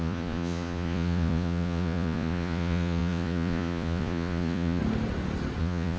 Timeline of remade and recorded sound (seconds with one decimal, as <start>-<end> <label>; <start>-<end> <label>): 0.0-4.8 remade; 4.8-5.6 recorded; 5.6-6.0 remade